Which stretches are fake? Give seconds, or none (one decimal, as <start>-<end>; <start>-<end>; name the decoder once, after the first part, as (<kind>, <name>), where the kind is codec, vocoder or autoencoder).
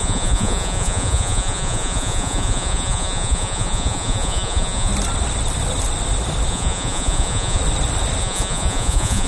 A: 0.0-4.9 (vocoder, Vocos); 6.5-7.6; 8.2-9.3